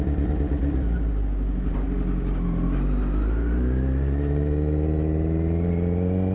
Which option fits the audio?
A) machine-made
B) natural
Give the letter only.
B